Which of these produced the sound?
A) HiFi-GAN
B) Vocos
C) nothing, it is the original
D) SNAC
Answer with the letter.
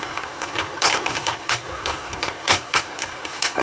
D